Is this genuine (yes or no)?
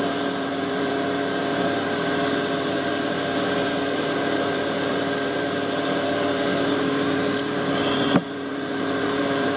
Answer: no